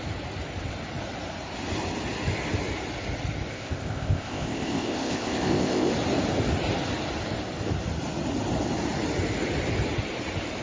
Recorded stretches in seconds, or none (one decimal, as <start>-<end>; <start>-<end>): 0.0-3.5; 5.9-10.6